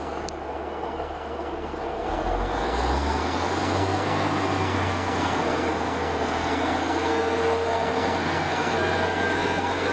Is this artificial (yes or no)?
yes